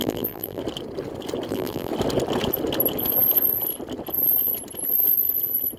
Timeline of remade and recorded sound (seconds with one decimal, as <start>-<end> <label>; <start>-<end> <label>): 0.0-0.6 remade; 0.6-1.5 recorded; 1.5-1.9 remade; 1.9-5.8 recorded